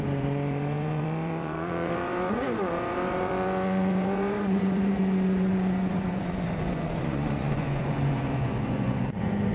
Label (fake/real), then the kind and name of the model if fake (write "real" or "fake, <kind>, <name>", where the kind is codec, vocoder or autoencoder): fake, vocoder, Vocos